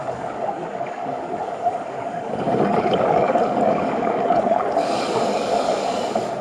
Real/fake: fake